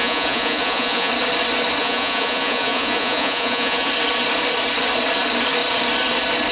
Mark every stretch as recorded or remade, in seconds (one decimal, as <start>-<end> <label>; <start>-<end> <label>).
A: 0.0-1.1 remade; 1.1-1.8 recorded; 1.8-3.9 remade; 3.9-6.5 recorded